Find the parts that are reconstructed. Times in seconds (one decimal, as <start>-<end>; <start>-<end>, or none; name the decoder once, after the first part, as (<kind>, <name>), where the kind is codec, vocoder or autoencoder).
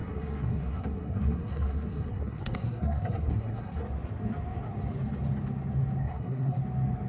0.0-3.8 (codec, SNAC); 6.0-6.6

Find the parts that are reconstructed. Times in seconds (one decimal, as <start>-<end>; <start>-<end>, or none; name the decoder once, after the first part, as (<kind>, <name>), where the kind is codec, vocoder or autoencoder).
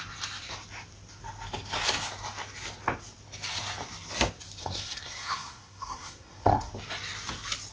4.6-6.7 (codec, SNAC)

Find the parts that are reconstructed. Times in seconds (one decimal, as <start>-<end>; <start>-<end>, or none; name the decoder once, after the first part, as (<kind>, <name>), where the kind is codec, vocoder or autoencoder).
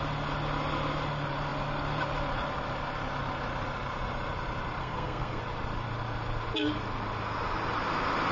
4.8-5.4 (codec, SNAC)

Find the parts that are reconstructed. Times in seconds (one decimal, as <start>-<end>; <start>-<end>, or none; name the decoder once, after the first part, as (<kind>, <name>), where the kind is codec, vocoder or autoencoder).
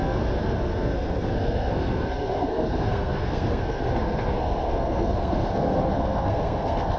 0.0-7.0 (codec, SNAC)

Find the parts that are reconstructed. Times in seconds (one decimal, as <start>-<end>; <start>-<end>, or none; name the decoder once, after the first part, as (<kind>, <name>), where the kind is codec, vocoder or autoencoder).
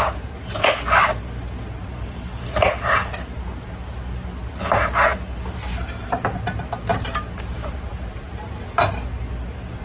none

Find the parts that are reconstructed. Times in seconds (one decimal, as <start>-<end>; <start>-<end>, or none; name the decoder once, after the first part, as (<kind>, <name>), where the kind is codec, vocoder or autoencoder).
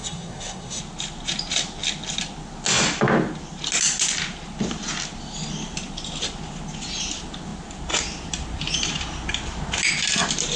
0.0-0.8 (codec, SNAC)